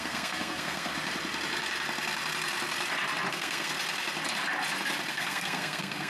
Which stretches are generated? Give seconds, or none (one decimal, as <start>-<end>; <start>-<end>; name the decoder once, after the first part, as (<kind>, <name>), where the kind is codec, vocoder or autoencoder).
0.0-0.9 (codec, SNAC); 3.3-3.7; 5.1-6.1